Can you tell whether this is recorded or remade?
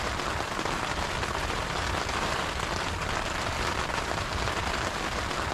recorded